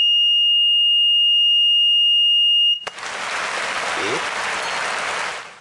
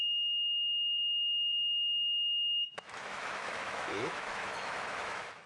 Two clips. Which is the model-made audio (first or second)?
second